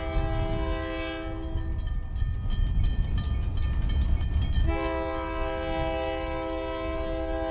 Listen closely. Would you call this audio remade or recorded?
recorded